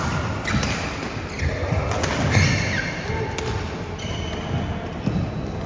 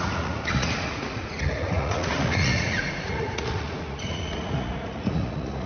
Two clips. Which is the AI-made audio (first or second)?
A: second